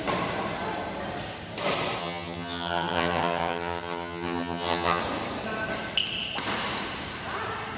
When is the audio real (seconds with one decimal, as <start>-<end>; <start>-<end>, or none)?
0.0-2.0; 5.0-7.8